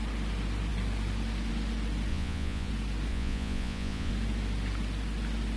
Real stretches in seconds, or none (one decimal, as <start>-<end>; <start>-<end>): 0.0-2.1; 2.7-3.1; 4.1-5.6